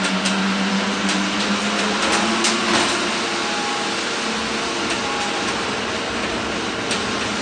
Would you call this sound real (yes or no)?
yes